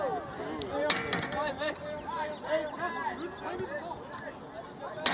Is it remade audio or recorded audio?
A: recorded